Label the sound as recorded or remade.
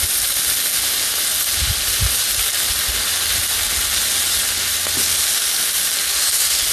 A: recorded